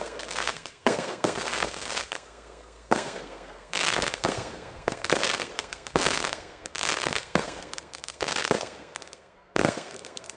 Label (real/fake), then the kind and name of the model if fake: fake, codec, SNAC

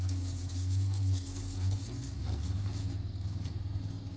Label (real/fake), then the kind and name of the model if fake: fake, codec, SNAC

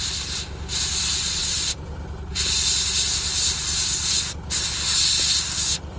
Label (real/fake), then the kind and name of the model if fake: real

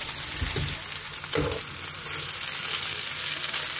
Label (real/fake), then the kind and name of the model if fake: real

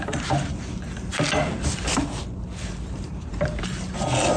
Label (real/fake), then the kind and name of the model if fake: real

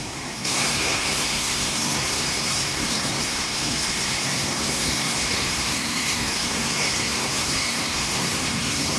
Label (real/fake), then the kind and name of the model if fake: fake, codec, SNAC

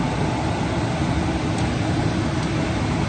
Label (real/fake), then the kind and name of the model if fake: real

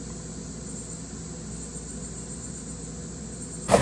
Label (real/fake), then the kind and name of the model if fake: real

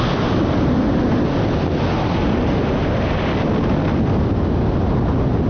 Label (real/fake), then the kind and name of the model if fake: real